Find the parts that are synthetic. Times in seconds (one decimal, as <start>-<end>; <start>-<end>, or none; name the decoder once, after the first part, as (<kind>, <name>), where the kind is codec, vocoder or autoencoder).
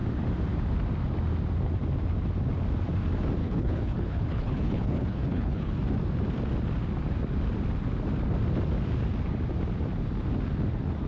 3.4-5.7 (codec, HILCodec)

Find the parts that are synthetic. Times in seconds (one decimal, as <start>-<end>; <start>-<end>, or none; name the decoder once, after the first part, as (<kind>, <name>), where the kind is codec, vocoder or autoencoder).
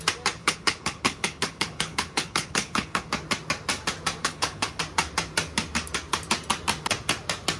0.4-3.1 (codec, HILCodec); 4.2-4.8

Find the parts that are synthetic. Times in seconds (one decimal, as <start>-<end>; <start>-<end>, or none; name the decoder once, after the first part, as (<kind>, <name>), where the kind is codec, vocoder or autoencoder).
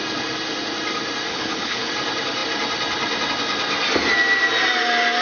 1.3-1.9 (codec, HILCodec)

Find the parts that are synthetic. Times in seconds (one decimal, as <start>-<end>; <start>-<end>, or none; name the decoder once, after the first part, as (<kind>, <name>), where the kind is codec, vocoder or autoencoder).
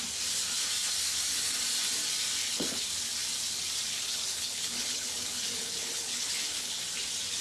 2.4-2.9 (codec, HILCodec); 3.9-6.8